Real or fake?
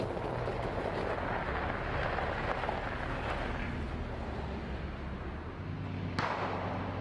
real